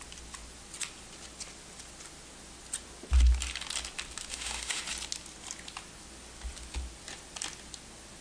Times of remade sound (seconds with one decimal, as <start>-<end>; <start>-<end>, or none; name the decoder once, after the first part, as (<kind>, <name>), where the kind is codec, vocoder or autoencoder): 4.3-4.8 (autoencoder, DAC-VAE)